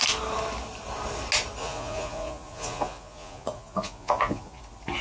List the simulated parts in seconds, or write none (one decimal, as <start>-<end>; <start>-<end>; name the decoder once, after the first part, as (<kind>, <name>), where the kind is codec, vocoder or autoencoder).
1.6-4.6 (vocoder, Vocos)